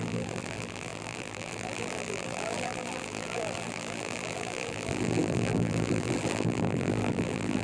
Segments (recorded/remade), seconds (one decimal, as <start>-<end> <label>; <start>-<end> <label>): 0.0-7.6 remade

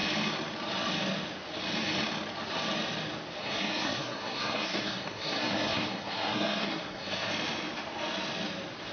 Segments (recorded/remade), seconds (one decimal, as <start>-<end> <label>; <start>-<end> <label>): 0.0-3.4 recorded; 3.4-7.3 remade; 7.3-8.9 recorded

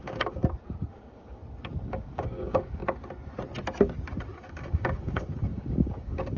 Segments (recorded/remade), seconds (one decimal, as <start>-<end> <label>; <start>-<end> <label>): 0.0-0.4 remade; 0.4-0.9 recorded; 0.9-1.4 remade; 1.4-1.9 recorded; 1.9-2.8 remade; 2.8-4.4 recorded; 4.4-6.4 remade